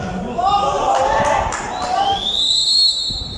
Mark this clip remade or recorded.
recorded